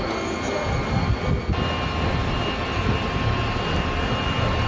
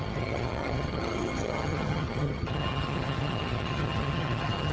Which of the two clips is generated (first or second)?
second